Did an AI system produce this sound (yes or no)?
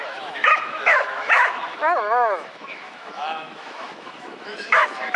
yes